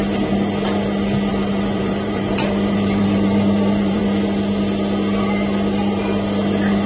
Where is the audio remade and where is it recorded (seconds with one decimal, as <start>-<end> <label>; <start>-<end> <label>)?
0.0-1.3 recorded; 1.3-4.0 remade; 4.0-6.9 recorded